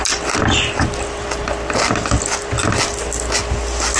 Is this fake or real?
real